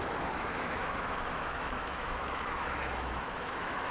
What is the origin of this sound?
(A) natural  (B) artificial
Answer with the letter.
B